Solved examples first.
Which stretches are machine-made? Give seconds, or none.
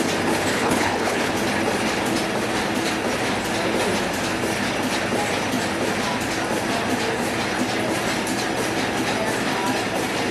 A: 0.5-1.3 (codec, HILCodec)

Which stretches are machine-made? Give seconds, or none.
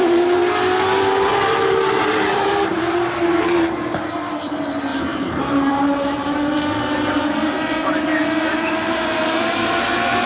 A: 0.0-0.4 (vocoder, BigVGAN v2); 1.9-10.3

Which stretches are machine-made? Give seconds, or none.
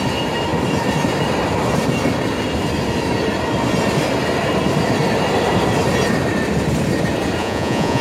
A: 7.4-8.0 (vocoder, Vocos)